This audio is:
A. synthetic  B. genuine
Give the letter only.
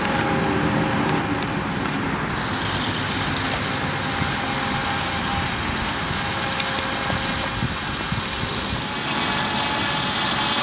B